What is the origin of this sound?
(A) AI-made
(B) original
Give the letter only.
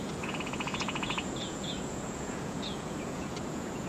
A